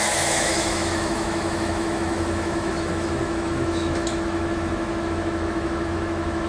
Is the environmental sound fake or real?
fake